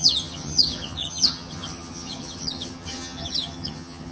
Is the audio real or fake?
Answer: fake